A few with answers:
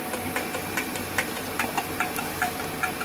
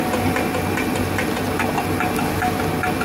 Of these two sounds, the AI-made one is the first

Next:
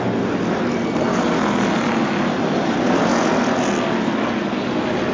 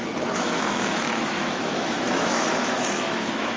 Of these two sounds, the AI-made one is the second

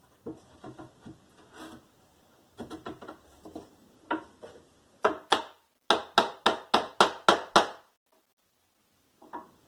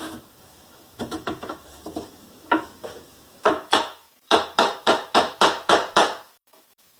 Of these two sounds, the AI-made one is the second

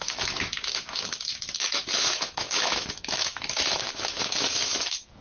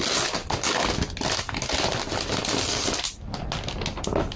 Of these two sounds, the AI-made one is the first